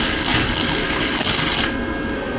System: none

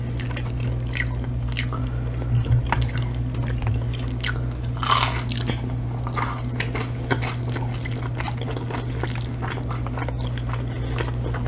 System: none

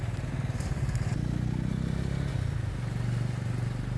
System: none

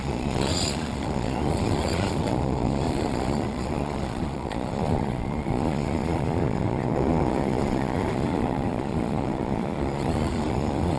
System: vocoder, Vocos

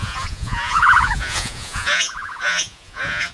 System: vocoder, Vocos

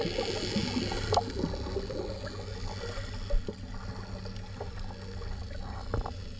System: none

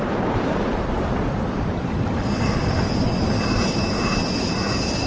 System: none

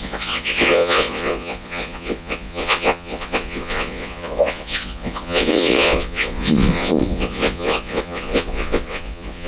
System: vocoder, Vocos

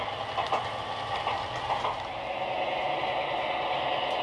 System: none